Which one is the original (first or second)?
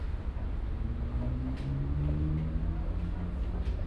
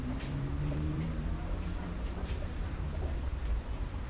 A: first